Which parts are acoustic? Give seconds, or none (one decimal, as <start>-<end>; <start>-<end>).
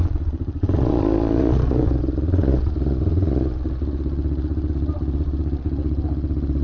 none